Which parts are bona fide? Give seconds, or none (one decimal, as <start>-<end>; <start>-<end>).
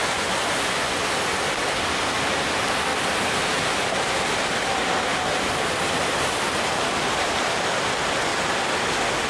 1.0-9.3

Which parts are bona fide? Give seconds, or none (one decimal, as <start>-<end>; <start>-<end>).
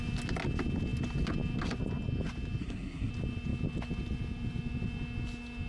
0.0-2.6; 3.1-5.7